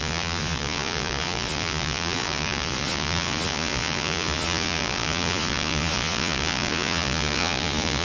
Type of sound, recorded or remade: remade